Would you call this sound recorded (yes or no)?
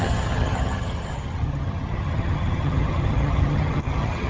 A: no